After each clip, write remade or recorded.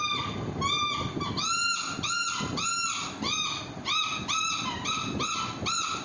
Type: recorded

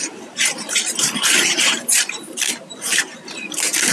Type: remade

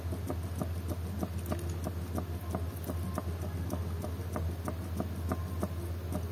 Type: recorded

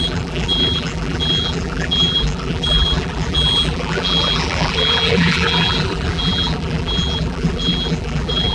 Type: remade